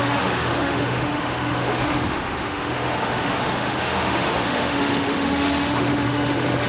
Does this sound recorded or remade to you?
remade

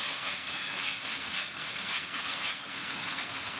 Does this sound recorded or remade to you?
remade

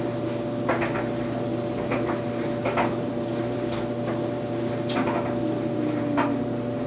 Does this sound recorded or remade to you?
recorded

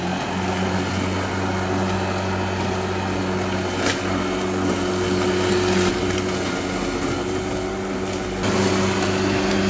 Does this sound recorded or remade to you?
recorded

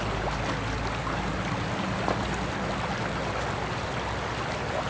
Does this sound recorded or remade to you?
recorded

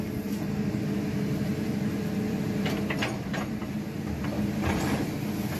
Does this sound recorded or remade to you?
recorded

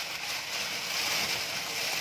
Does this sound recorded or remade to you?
recorded